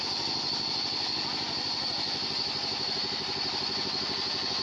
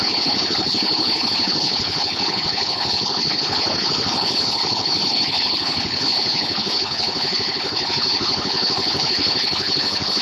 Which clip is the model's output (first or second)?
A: second